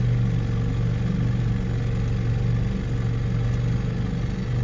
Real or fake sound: real